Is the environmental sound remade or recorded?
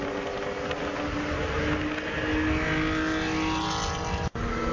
recorded